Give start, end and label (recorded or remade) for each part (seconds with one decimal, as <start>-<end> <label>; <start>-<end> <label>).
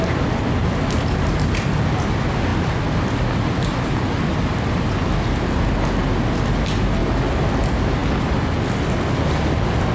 0.0-9.9 recorded